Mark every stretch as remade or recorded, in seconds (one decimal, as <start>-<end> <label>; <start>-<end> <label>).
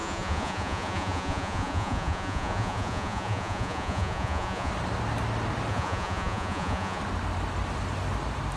0.0-4.7 remade; 4.7-5.7 recorded; 5.7-7.0 remade; 7.0-8.6 recorded